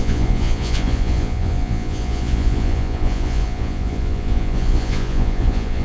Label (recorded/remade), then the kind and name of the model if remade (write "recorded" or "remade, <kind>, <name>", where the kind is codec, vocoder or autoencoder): remade, vocoder, Vocos